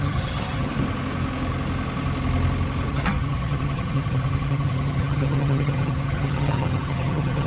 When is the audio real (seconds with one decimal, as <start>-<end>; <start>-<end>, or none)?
0.7-2.9